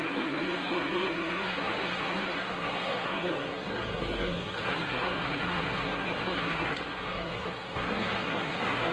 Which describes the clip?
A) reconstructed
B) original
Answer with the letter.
A